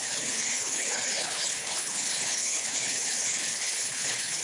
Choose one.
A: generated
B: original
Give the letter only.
A